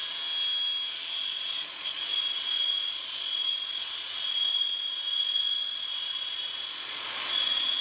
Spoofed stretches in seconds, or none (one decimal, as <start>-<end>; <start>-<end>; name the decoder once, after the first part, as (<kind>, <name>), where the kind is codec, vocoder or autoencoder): 1.2-7.8 (vocoder, Vocos)